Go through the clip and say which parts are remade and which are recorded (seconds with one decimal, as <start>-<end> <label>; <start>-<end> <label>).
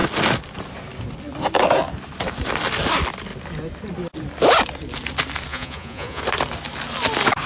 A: 0.0-5.5 recorded; 5.5-6.2 remade; 6.2-7.5 recorded